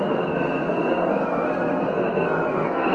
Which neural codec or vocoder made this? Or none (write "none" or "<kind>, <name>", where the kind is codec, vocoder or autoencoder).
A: codec, SNAC